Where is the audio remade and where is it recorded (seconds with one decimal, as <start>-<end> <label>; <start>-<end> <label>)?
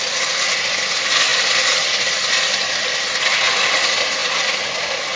0.0-5.2 recorded